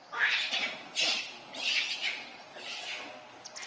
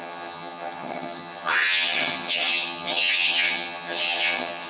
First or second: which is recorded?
first